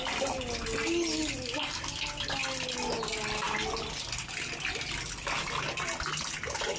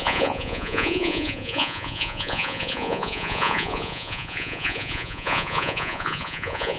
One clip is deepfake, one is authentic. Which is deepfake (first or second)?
second